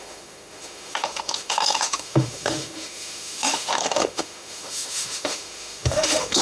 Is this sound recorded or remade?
remade